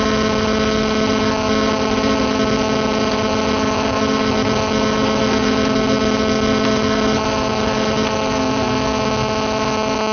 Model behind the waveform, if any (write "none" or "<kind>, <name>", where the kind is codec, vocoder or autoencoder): none